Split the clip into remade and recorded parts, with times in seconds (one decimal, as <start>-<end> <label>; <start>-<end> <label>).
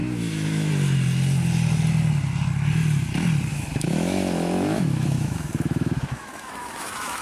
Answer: 0.0-0.7 remade; 0.7-3.5 recorded; 3.5-7.2 remade